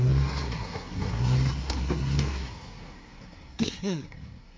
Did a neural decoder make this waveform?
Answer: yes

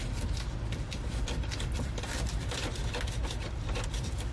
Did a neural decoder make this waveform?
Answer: yes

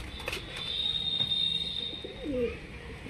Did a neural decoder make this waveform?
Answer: no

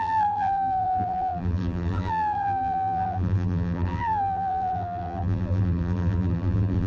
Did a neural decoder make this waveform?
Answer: yes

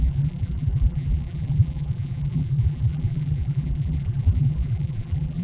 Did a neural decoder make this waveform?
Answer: yes